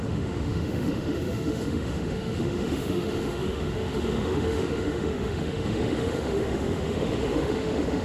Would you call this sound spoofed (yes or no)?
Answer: yes